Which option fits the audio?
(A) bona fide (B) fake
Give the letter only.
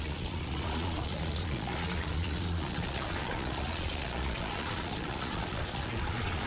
B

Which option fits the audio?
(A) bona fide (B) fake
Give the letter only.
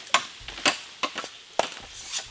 A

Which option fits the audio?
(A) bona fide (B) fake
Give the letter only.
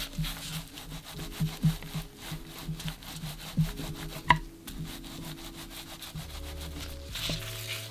A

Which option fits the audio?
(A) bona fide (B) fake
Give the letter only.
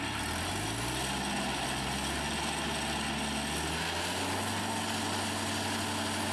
A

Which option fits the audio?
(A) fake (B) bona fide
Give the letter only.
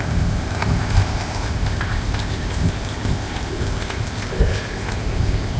A